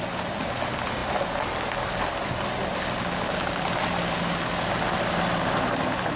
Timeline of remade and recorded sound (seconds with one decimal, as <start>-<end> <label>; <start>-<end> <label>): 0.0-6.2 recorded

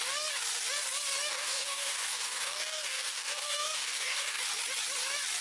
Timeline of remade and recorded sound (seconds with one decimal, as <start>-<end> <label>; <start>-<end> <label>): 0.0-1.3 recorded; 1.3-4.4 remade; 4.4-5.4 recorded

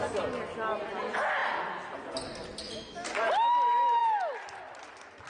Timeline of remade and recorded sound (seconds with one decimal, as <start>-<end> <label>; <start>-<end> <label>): 0.0-5.3 recorded